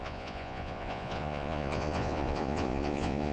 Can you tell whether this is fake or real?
fake